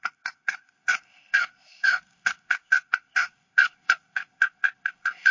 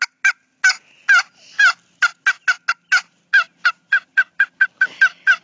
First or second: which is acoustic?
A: second